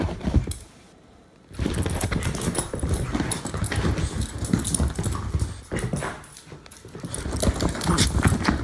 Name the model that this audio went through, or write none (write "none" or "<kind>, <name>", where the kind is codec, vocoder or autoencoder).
none